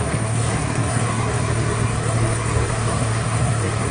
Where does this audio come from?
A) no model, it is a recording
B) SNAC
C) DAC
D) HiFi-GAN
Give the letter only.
B